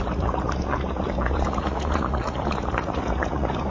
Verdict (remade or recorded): remade